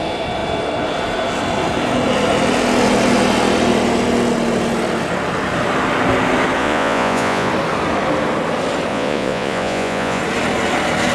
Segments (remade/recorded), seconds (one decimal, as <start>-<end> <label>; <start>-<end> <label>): 0.0-6.6 recorded; 6.6-7.5 remade; 7.5-8.9 recorded; 8.9-10.2 remade; 10.2-11.1 recorded